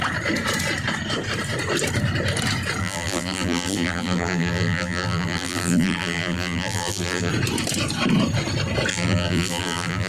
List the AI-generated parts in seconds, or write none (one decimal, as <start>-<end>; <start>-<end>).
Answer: 2.8-7.3; 8.9-10.1